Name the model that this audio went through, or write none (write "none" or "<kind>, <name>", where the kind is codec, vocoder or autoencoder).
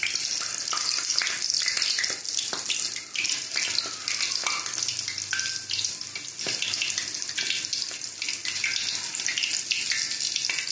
none